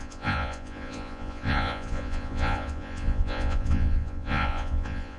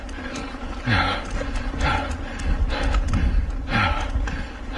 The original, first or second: second